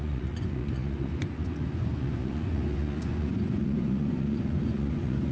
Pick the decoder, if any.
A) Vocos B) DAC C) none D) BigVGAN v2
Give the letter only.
A